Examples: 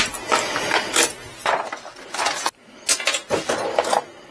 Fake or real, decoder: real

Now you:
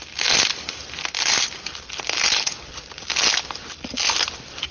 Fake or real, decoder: real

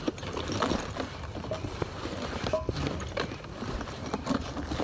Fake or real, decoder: fake, vocoder, BigVGAN v2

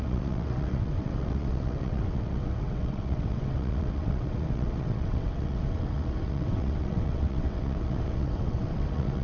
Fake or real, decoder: fake, vocoder, WaveNeXt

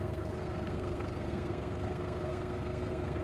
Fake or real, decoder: fake, codec, SNAC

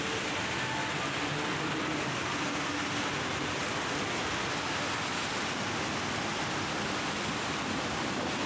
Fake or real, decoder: real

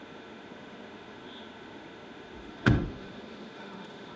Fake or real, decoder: fake, autoencoder, DAC-VAE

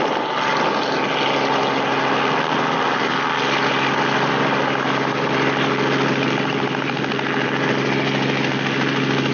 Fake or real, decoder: real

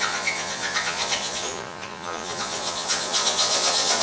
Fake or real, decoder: fake, vocoder, Vocos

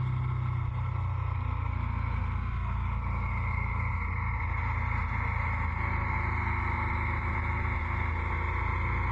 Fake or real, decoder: real